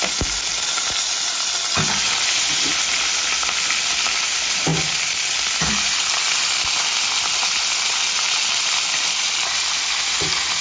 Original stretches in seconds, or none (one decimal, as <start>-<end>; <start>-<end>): 0.0-10.6